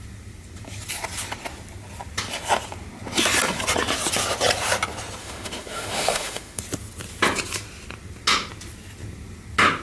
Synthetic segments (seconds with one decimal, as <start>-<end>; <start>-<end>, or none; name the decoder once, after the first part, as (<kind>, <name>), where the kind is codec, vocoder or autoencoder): 5.2-6.6 (autoencoder, DAC-VAE)